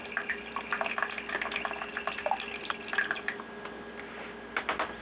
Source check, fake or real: real